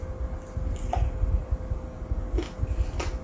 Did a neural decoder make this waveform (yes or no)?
no